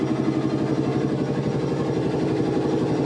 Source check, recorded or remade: recorded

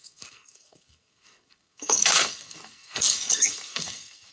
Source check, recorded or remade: remade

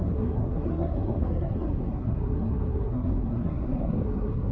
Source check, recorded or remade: remade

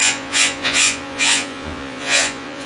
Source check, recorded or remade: remade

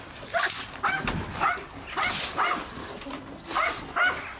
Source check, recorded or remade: recorded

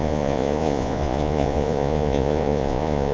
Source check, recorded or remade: remade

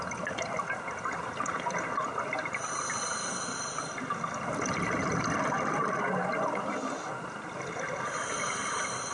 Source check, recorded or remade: recorded